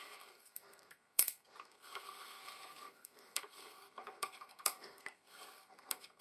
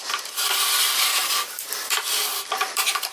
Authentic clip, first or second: second